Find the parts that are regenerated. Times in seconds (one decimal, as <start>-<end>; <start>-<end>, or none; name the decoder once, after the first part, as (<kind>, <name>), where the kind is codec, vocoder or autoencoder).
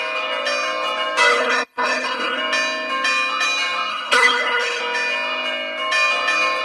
1.3-2.4 (codec, HILCodec); 3.9-4.8